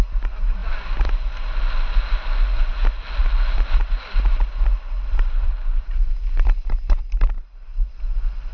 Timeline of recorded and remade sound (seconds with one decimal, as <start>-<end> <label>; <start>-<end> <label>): 0.0-5.1 recorded; 5.1-7.0 remade; 7.0-8.5 recorded